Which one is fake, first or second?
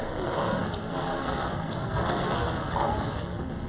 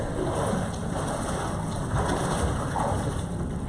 first